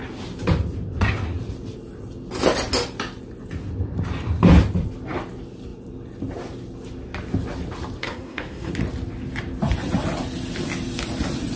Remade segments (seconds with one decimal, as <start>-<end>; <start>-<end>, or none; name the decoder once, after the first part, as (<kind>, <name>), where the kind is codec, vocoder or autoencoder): 8.0-8.7 (codec, SNAC)